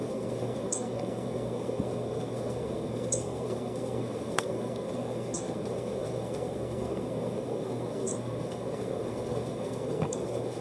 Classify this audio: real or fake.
fake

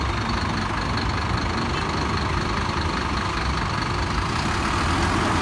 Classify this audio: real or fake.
real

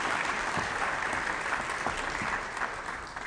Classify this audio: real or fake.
real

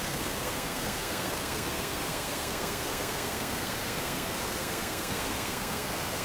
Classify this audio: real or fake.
fake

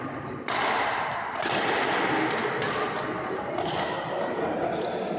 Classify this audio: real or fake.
real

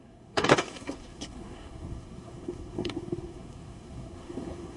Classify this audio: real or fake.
fake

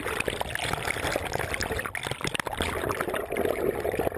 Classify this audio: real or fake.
real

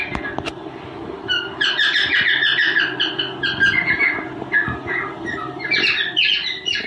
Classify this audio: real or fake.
real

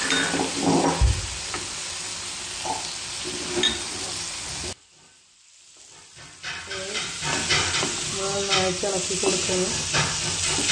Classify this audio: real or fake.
real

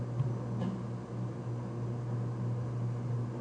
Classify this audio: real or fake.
real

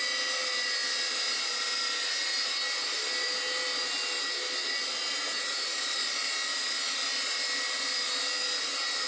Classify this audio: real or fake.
real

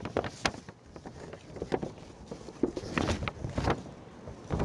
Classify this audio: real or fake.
real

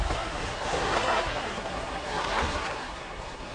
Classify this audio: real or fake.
fake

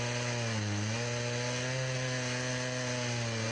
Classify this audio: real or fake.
real